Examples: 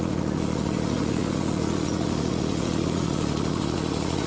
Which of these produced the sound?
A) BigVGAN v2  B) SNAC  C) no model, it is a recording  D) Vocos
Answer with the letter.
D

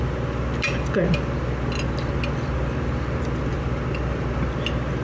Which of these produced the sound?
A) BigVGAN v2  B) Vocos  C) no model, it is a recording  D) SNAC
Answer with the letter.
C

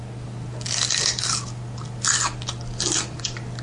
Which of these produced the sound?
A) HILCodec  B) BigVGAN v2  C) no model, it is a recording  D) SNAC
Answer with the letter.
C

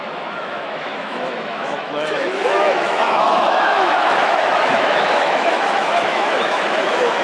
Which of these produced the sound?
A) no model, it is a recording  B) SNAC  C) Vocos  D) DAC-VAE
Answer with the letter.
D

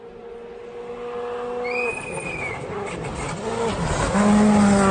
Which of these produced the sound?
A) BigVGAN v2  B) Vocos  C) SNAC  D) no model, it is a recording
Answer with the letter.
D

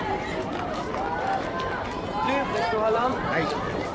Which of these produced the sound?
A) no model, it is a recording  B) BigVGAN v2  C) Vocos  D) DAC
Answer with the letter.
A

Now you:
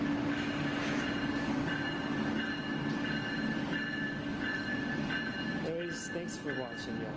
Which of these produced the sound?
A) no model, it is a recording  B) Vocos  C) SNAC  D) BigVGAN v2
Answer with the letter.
A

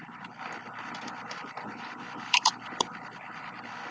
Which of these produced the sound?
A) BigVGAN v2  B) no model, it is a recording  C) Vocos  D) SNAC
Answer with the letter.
A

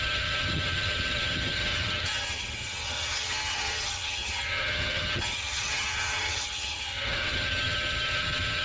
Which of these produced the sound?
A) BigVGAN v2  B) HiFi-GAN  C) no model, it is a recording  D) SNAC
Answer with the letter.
B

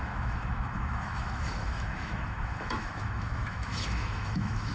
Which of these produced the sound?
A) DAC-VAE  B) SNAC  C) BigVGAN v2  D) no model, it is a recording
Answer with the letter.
A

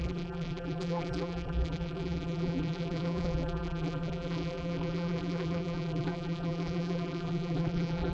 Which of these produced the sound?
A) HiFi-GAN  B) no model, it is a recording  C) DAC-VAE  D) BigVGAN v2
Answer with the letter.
D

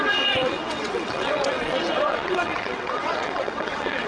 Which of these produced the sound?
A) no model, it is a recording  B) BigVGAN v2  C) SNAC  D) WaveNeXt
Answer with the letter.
D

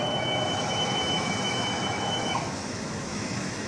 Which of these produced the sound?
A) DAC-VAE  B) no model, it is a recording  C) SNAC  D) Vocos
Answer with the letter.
A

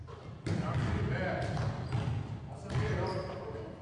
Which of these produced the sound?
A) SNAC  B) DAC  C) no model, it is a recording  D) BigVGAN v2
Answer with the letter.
C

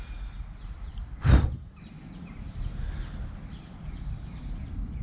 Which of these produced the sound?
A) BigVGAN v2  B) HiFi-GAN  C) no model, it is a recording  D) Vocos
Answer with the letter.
C